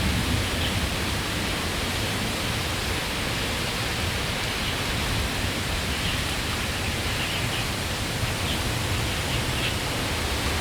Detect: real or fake real